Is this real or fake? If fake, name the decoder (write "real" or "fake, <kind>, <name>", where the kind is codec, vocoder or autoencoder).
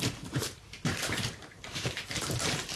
fake, vocoder, BigVGAN v2